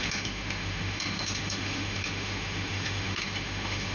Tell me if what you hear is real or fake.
fake